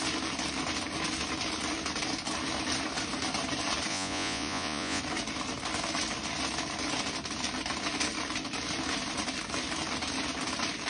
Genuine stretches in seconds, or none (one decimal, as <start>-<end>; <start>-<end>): 0.0-3.9; 5.0-10.9